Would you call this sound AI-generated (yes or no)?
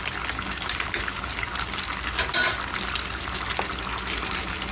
no